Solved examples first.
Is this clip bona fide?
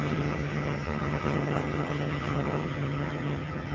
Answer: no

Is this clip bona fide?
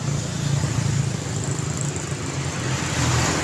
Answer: yes